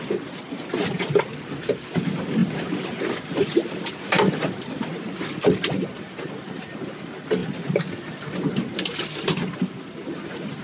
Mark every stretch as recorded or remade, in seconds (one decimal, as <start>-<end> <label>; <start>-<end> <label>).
0.0-10.6 recorded